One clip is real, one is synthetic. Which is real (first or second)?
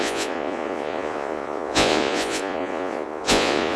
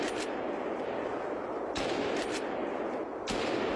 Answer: second